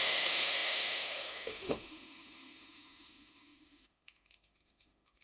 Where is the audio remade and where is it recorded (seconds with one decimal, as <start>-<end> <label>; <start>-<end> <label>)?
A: 0.0-5.2 remade